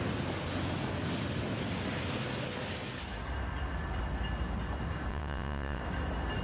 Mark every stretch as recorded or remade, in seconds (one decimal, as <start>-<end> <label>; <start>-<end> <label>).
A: 0.0-5.1 recorded; 5.1-5.8 remade; 5.8-6.4 recorded